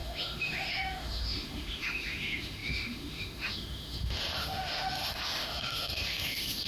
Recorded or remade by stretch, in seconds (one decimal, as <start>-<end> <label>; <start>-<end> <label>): 0.0-6.7 remade